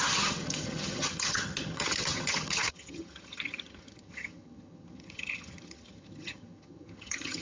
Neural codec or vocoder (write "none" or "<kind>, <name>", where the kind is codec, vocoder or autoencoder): vocoder, HiFi-GAN